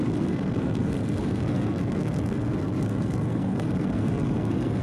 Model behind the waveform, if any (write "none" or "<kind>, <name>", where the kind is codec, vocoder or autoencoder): codec, SNAC